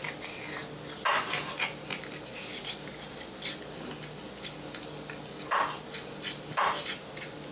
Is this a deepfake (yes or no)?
no